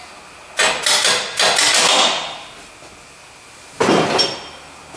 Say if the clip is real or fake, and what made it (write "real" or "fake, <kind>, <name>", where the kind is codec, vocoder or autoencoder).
real